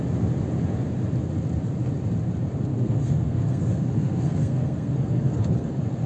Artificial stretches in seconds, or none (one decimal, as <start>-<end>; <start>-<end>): 2.7-6.1